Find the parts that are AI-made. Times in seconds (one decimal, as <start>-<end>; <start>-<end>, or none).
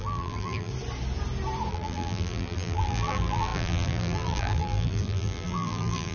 0.0-0.7; 1.7-6.1